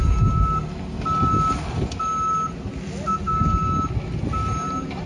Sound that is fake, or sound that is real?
real